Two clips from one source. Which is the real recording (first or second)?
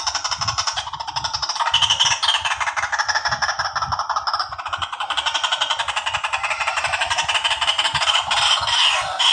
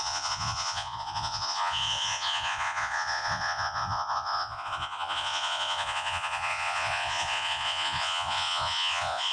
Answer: first